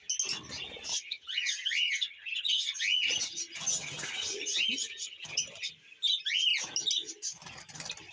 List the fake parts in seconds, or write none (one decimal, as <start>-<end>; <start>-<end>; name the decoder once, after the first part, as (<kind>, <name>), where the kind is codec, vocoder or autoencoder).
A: 0.9-5.7 (vocoder, HiFi-GAN)